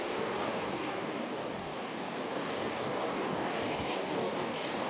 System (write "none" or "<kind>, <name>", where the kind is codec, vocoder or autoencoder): codec, DAC